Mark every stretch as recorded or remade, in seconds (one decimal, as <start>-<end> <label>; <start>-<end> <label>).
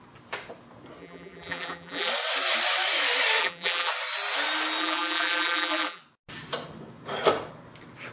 0.0-1.0 recorded; 1.0-2.1 remade; 2.1-3.4 recorded; 3.4-3.9 remade; 3.9-4.8 recorded; 4.8-6.0 remade; 6.0-8.1 recorded